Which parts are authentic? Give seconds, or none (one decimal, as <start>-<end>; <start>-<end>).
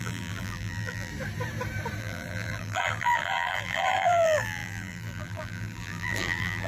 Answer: 1.1-2.0